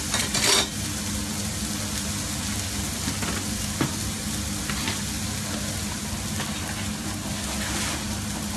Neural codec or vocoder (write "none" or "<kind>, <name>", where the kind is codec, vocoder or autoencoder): none